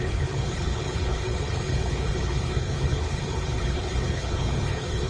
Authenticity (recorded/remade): remade